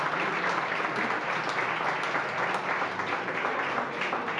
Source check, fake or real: real